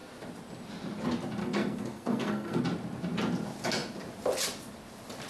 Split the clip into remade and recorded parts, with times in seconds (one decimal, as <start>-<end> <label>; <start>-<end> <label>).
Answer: 0.0-1.4 recorded; 1.4-2.6 remade; 2.6-5.3 recorded